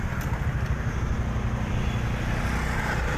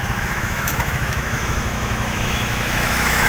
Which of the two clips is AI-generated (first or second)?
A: second